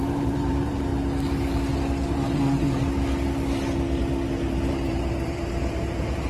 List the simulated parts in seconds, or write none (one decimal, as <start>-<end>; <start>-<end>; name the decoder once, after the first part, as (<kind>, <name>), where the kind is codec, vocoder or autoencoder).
0.0-0.9 (vocoder, BigVGAN v2); 4.7-6.3